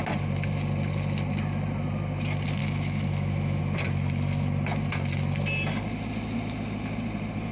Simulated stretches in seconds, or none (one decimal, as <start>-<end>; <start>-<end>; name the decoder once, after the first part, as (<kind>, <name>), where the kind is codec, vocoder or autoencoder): 2.6-3.6 (autoencoder, DAC-VAE)